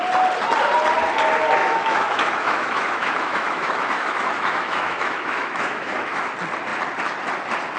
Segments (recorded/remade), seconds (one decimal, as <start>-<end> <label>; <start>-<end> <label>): 0.0-1.6 recorded; 1.6-6.3 remade; 6.3-7.8 recorded